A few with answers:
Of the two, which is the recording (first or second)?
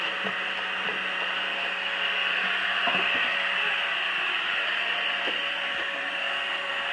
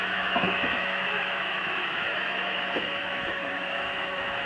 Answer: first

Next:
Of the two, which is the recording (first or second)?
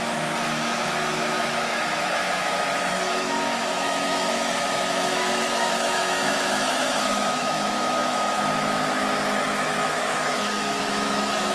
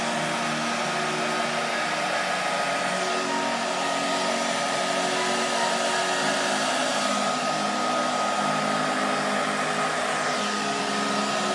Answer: second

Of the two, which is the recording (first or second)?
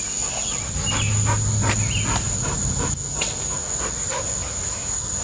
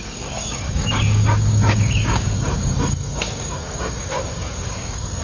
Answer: first